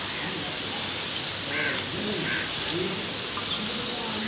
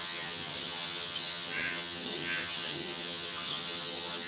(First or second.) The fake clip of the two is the second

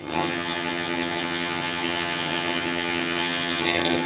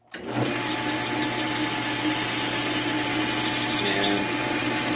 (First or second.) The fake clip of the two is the first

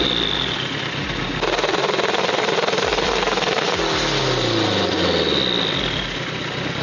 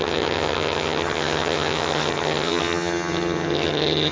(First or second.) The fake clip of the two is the second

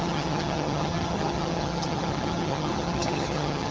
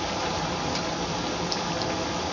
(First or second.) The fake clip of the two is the first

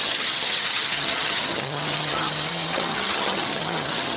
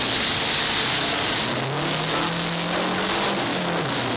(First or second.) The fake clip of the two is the first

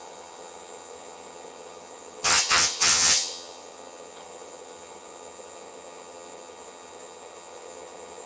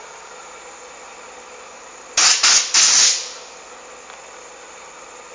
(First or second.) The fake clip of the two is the first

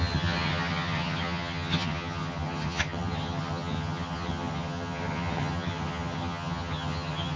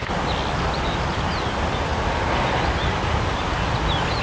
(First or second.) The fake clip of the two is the first